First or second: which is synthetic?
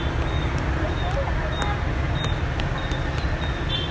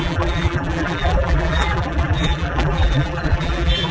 second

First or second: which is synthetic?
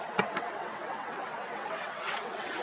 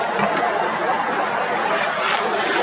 first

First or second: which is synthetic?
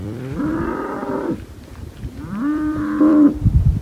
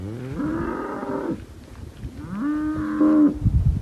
first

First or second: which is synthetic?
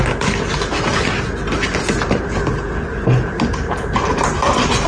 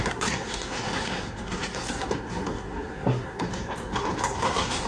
second